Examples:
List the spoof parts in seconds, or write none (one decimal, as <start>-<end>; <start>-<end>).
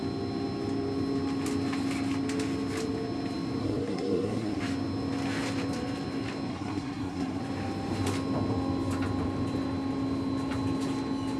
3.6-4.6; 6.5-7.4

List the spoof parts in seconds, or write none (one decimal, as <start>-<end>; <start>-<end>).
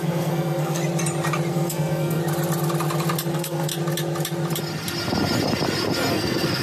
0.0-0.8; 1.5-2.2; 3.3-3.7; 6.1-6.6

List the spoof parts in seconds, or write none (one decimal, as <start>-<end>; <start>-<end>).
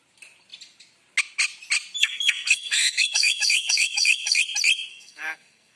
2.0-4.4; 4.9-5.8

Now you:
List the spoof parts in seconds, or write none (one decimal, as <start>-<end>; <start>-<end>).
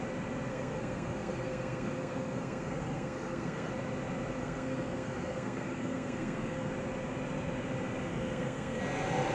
0.5-3.7; 4.4-6.7; 8.1-8.8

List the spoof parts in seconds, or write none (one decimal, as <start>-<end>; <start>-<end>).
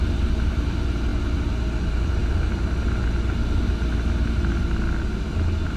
none